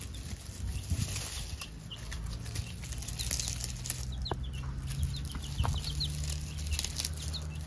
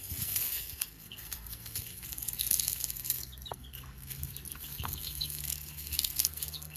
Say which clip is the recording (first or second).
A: first